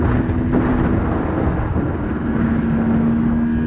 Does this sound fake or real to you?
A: real